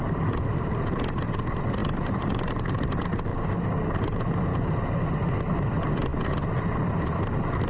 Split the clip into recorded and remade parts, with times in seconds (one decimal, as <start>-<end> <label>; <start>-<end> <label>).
0.0-1.8 recorded; 1.8-2.5 remade; 2.5-3.3 recorded; 3.3-3.8 remade; 3.8-7.7 recorded